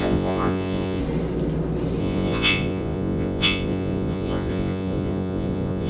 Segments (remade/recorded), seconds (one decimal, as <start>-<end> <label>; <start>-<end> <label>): 0.0-1.0 remade; 1.0-2.0 recorded; 2.0-5.9 remade